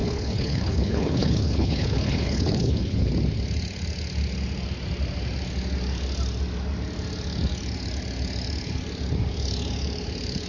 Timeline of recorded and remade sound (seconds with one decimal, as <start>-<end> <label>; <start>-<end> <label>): 0.0-3.1 remade; 3.1-10.5 recorded